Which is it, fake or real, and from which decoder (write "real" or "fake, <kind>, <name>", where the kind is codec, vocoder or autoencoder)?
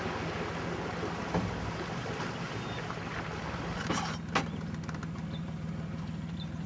real